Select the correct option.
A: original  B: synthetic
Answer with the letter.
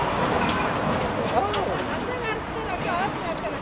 A